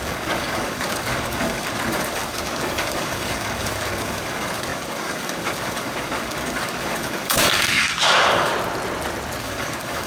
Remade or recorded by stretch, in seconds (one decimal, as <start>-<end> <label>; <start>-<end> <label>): 0.0-8.5 remade; 8.5-9.4 recorded; 9.4-10.1 remade